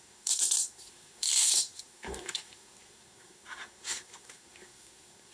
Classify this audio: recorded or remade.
remade